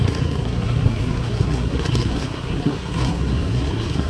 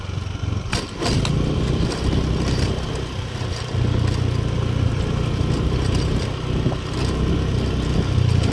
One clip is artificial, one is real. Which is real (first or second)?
second